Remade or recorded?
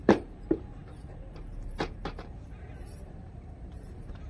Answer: remade